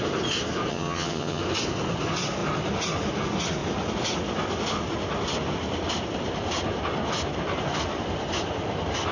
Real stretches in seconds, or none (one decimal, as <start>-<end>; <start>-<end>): 0.0-0.7; 1.4-9.1